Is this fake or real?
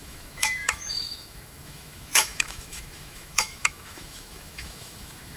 fake